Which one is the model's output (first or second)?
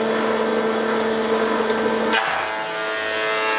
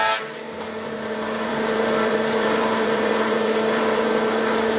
second